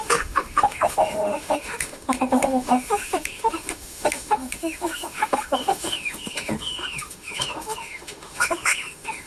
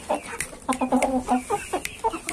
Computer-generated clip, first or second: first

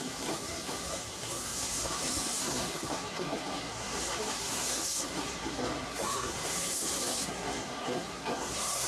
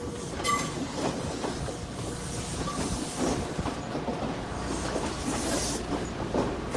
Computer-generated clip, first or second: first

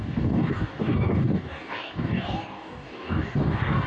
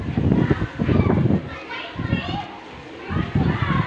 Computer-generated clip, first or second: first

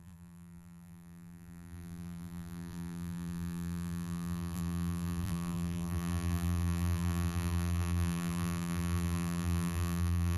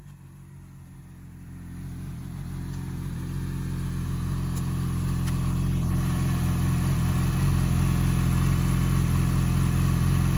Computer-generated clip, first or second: first